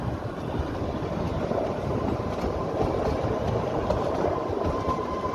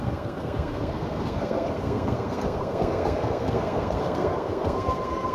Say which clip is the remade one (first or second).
second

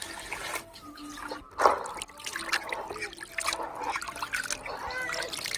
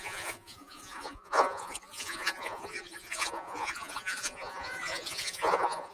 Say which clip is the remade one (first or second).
second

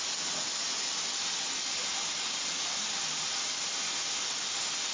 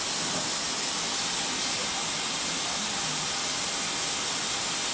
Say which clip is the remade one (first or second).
first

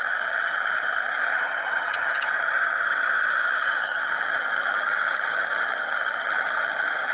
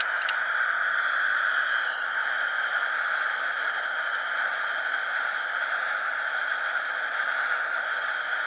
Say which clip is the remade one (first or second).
first